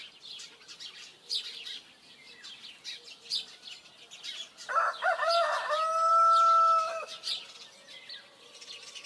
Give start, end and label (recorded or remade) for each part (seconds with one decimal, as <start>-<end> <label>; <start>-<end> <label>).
0.0-9.1 recorded